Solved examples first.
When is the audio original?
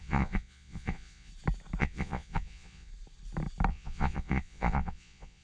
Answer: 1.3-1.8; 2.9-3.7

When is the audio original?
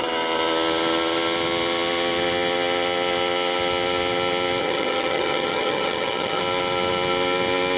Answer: 0.0-4.6; 6.4-7.8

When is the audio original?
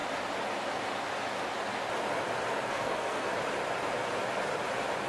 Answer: 0.0-2.7; 3.3-5.1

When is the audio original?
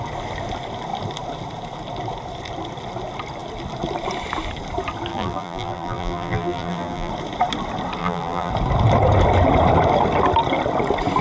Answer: 0.0-5.1; 7.1-8.0; 8.5-11.2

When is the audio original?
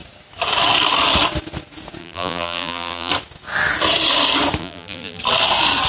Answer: 0.0-2.0; 3.1-4.6; 5.2-5.9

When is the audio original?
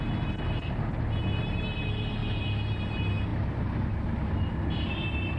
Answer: 0.0-5.4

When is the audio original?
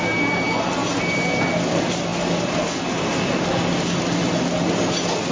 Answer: 0.0-5.3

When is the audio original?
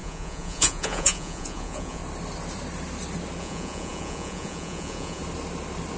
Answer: 2.0-3.4; 5.2-6.0